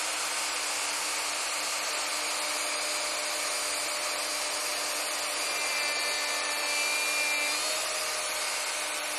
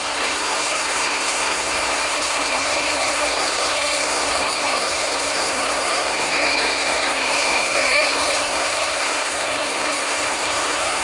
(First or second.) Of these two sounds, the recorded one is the first